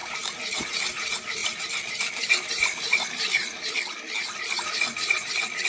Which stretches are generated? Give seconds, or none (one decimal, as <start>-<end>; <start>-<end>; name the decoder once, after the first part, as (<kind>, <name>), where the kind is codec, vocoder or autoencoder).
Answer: 1.4-4.8 (vocoder, BigVGAN v2)